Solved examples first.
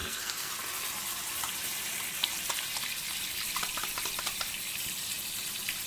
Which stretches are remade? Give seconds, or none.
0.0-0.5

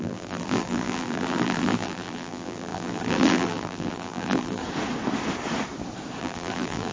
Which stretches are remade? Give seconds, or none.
0.0-4.6; 6.2-6.9

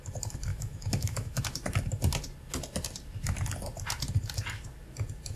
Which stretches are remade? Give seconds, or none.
0.5-1.4